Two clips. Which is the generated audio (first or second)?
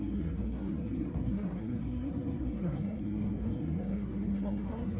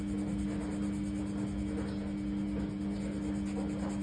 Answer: first